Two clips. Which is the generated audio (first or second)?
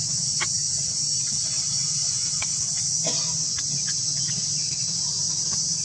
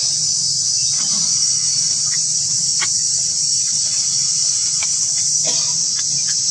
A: second